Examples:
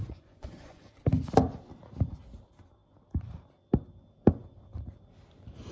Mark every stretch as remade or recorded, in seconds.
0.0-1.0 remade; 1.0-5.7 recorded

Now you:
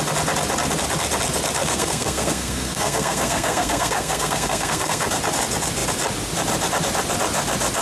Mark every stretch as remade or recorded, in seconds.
0.0-1.6 recorded; 1.6-5.2 remade; 5.2-7.8 recorded

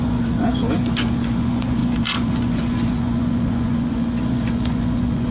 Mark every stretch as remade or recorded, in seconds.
0.0-5.3 remade

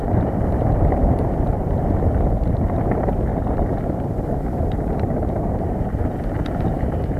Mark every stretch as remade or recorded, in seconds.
0.0-3.3 remade; 3.3-4.5 recorded; 4.5-7.2 remade

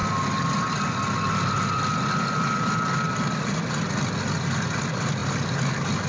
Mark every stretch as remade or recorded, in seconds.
0.0-6.1 recorded

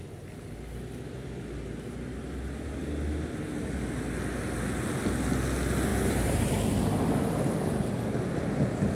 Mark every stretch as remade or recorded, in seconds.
0.0-5.9 recorded; 5.9-6.5 remade; 6.5-8.9 recorded

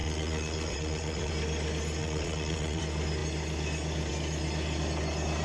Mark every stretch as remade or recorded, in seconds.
0.0-1.3 remade; 1.3-2.0 recorded; 2.0-2.8 remade; 2.8-5.4 recorded

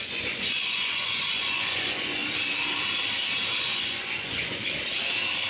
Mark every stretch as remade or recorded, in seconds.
0.0-2.2 remade; 2.2-3.6 recorded; 3.6-4.6 remade; 4.6-5.5 recorded